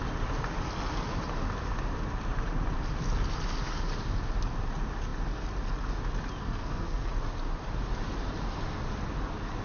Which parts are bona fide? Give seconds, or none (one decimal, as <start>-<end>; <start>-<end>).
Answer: 0.0-6.4; 7.1-9.6